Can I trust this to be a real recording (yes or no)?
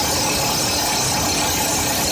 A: yes